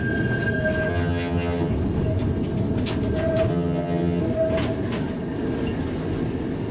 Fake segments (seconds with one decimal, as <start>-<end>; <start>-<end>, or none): 0.9-1.7; 3.5-4.2